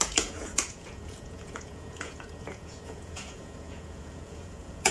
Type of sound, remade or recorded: remade